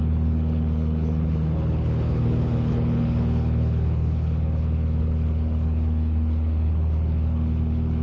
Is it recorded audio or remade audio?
remade